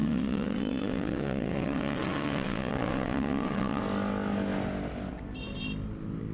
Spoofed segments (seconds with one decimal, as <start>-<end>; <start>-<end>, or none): 0.0-3.8